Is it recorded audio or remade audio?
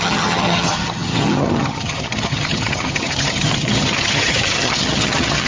remade